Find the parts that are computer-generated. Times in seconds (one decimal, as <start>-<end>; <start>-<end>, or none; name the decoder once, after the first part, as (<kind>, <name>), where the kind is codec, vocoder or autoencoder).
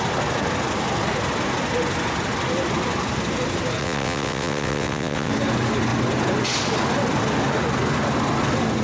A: 3.8-5.3 (vocoder, WaveNeXt)